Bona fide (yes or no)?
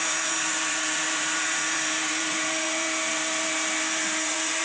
no